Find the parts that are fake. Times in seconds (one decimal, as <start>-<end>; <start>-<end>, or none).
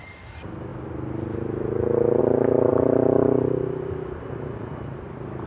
none